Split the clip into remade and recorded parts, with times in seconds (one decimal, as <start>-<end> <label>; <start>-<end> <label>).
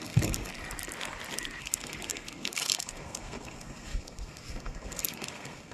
0.0-0.5 remade; 0.5-1.6 recorded; 1.6-5.7 remade